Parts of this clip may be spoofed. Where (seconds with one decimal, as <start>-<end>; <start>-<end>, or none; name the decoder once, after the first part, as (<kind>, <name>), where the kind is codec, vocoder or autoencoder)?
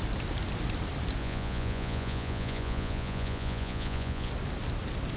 1.2-4.3 (vocoder, Vocos)